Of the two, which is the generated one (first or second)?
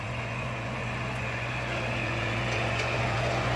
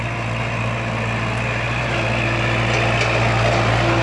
first